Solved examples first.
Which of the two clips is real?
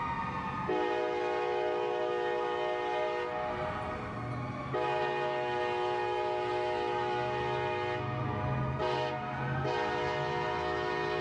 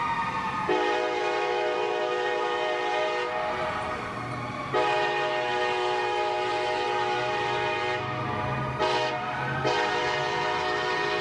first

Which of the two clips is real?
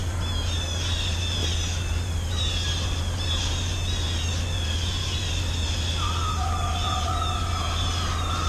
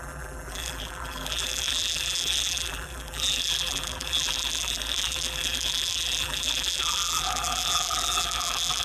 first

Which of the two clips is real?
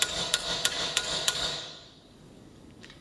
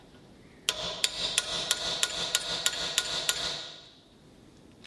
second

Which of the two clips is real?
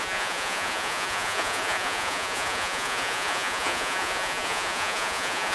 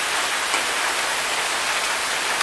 second